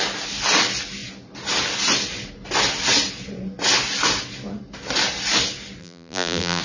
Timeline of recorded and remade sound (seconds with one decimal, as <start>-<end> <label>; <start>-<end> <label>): 0.0-5.8 recorded; 5.8-6.6 remade